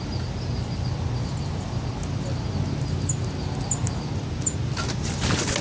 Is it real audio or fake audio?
real